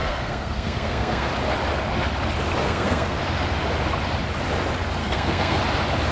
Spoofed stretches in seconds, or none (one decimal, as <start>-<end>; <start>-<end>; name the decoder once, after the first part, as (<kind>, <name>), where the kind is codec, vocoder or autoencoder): 0.0-1.3 (codec, SNAC); 2.6-3.2; 5.0-5.6